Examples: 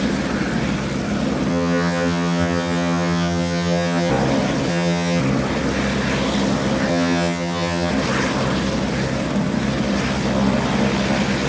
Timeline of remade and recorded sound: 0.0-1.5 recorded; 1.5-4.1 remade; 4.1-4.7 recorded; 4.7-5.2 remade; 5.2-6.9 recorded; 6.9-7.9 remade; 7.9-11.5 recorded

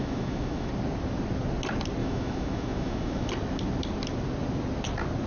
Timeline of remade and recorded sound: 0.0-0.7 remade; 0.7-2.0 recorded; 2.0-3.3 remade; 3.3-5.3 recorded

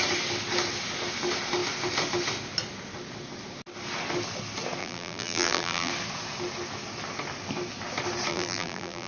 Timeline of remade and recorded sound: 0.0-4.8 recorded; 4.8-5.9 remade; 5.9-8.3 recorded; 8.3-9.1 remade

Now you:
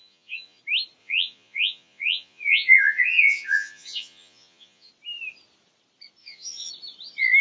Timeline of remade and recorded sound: 0.0-0.6 remade; 0.6-1.0 recorded; 1.0-4.9 remade; 4.9-6.2 recorded; 6.2-6.7 remade; 6.7-7.4 recorded

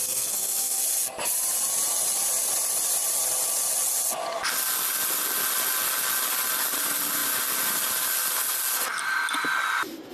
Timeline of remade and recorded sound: 0.0-0.8 remade; 0.8-10.1 recorded

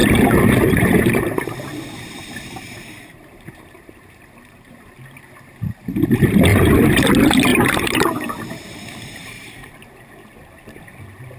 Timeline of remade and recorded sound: 0.0-4.9 remade; 4.9-6.5 recorded; 6.5-7.1 remade; 7.1-7.5 recorded; 7.5-9.7 remade; 9.7-11.4 recorded